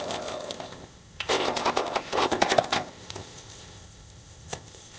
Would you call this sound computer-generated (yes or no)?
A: yes